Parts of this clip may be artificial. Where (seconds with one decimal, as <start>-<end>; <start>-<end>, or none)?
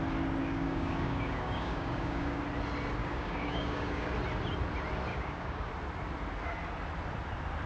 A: 0.4-2.4; 3.0-4.1; 5.1-5.7